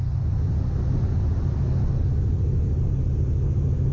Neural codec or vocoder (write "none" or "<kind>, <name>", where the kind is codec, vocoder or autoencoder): none